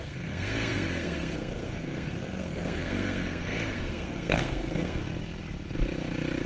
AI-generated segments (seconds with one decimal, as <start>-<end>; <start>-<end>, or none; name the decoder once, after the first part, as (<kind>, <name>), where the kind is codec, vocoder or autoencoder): 0.0-5.0 (codec, SNAC)